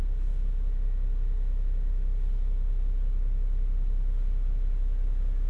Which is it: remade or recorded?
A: recorded